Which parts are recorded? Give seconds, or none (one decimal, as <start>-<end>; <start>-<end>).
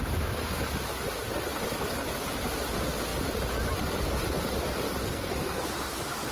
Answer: 0.0-5.0; 5.6-6.3